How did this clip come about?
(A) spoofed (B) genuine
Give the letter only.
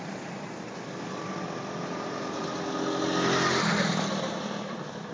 B